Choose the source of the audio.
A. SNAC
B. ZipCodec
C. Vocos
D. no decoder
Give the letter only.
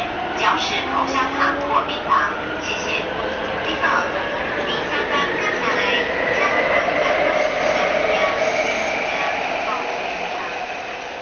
D